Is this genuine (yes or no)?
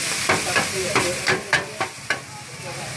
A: yes